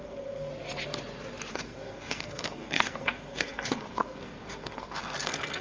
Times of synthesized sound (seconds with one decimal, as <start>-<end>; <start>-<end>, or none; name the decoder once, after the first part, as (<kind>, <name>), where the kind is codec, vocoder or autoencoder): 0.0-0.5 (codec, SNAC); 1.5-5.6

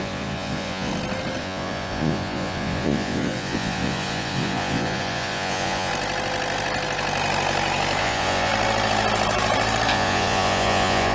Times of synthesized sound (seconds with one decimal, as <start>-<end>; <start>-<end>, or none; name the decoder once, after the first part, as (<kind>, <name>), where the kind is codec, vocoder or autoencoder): 0.0-0.9 (vocoder, Vocos); 1.4-5.9; 8.0-8.5; 9.9-11.1

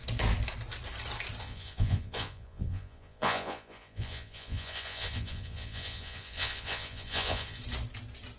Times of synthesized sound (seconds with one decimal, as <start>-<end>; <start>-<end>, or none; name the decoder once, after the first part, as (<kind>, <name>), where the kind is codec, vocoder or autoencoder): 1.4-7.6 (vocoder, Vocos)